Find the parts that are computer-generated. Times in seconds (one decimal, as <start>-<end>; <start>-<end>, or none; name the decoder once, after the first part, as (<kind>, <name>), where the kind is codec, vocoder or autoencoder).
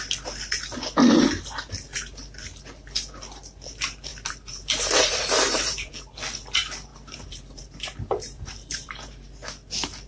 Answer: 1.0-1.7 (vocoder, BigVGAN v2); 4.1-5.9; 6.9-9.3